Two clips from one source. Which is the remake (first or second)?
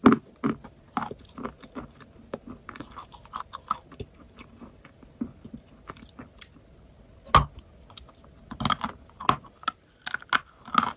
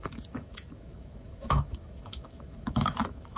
second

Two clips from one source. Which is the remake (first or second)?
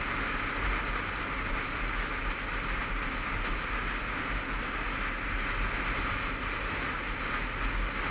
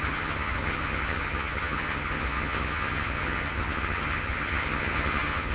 second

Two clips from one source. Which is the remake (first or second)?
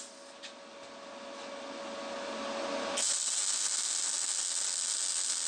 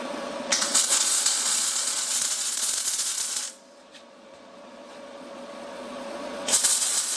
second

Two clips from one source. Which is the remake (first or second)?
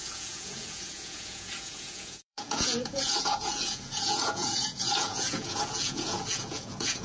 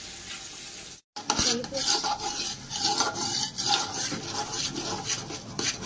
first